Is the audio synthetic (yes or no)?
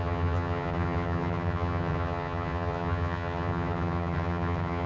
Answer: yes